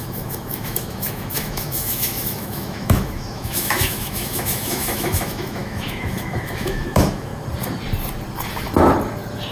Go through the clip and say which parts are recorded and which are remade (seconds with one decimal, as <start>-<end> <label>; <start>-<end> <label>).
0.0-7.3 remade; 7.3-9.5 recorded